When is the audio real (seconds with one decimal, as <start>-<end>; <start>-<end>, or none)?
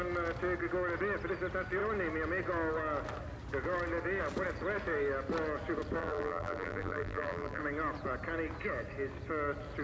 0.0-6.0; 7.6-9.8